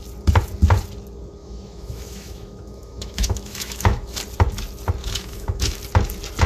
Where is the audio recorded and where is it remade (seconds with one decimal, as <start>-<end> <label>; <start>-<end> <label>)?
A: 0.0-1.4 recorded; 1.4-4.2 remade; 4.2-5.0 recorded; 5.0-5.8 remade; 5.8-6.5 recorded